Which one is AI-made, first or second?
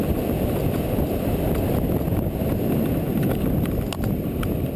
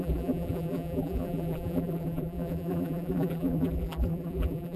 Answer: second